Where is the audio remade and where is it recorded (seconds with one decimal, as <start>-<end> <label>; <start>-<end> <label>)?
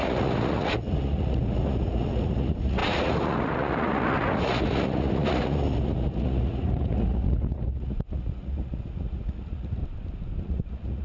0.0-9.8 remade; 9.8-10.4 recorded; 10.4-11.0 remade